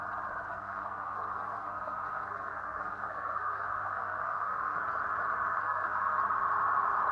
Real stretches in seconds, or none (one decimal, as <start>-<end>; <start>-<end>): 0.0-0.5; 4.8-5.5; 6.2-7.1